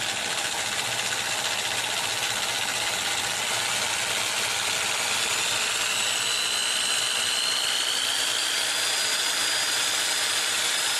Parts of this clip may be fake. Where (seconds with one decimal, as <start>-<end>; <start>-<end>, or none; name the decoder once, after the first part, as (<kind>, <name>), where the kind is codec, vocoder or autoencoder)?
none